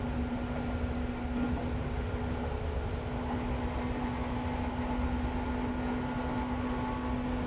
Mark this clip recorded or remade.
recorded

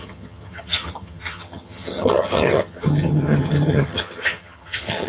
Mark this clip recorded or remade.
remade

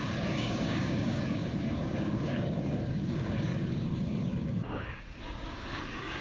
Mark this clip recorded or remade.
remade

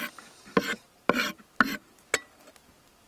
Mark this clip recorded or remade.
recorded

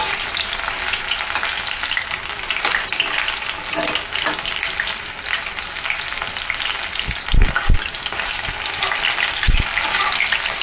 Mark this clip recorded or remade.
recorded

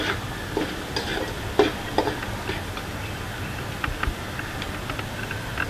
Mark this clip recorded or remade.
recorded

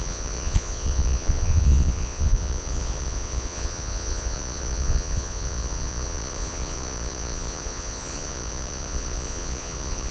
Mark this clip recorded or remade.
remade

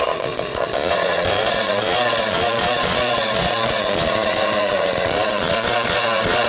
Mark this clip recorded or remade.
remade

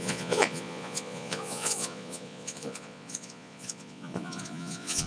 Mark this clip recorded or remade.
remade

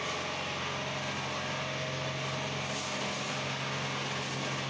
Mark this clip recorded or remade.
recorded